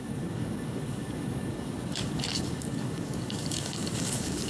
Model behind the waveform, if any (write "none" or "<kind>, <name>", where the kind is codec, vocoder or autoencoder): codec, DAC